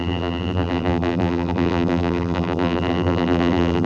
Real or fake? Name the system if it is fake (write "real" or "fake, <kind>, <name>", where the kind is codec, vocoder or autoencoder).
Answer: fake, vocoder, BigVGAN v2